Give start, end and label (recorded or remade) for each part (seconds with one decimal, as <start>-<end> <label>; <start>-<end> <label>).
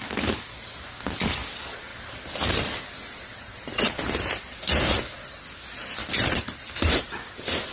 0.0-6.0 recorded; 6.0-7.0 remade; 7.0-7.7 recorded